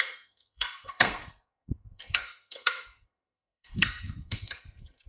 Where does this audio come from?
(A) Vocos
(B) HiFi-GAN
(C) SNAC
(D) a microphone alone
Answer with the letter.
C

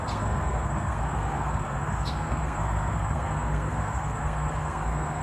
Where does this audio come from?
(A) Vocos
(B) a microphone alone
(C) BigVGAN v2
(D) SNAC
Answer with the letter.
D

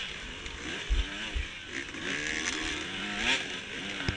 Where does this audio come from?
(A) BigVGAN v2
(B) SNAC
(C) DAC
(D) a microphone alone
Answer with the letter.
D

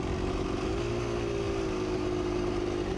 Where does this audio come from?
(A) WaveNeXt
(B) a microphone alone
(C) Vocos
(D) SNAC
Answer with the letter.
B